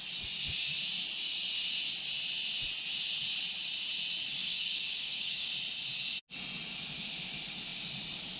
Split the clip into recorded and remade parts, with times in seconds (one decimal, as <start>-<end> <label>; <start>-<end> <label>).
0.0-4.4 recorded; 4.4-5.5 remade; 5.5-8.4 recorded